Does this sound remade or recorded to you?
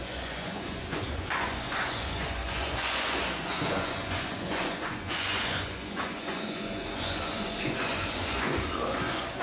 remade